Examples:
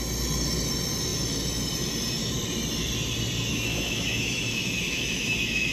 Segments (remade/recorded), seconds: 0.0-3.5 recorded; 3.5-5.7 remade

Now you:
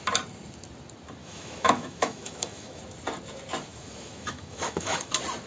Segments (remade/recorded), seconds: 0.0-1.2 recorded; 1.2-2.8 remade; 2.8-3.7 recorded; 3.7-5.1 remade; 5.1-5.5 recorded